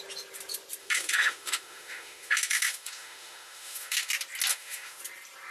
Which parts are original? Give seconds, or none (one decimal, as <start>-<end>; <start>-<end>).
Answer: 0.0-0.8; 4.1-4.5; 5.0-5.5